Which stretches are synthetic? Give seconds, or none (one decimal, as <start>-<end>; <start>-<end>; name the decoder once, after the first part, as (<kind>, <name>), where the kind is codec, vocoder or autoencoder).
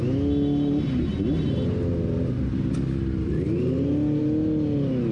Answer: none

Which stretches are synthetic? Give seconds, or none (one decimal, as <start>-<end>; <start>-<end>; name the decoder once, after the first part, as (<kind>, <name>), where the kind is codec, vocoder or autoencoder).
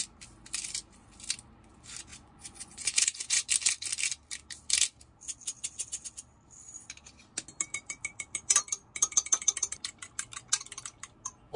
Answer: 2.1-3.5 (vocoder, Vocos)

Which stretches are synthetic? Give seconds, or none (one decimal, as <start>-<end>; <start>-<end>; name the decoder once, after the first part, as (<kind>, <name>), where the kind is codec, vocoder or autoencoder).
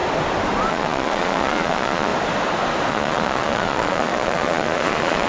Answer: 0.7-2.1 (vocoder, Vocos); 2.9-5.3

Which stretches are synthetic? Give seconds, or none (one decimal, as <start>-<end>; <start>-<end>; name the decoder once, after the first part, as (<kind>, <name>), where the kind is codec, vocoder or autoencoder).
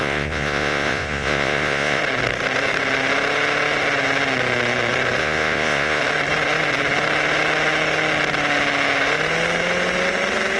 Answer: 0.0-2.0 (vocoder, Vocos); 5.2-6.0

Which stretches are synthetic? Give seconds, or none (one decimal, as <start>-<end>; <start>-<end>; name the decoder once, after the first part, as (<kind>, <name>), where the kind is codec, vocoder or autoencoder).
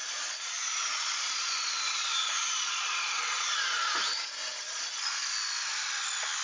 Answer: 0.0-3.8 (vocoder, Vocos); 4.5-5.1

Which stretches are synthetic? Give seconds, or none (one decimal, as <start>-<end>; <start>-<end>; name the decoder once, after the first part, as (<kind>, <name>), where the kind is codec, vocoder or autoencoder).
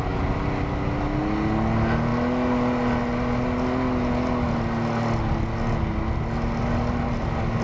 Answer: none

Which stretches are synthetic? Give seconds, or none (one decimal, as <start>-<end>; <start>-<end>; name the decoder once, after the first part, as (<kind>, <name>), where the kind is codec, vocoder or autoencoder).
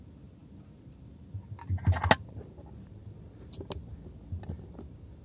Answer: none